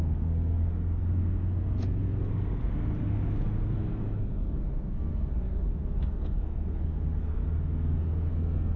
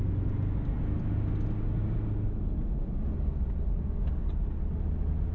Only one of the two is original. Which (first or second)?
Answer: second